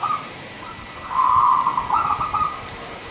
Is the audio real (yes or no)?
yes